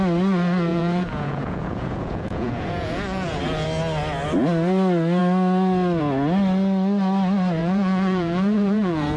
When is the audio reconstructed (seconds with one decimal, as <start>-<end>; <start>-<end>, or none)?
0.7-3.4; 7.6-9.2